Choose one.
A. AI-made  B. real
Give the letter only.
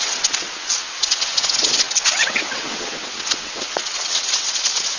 A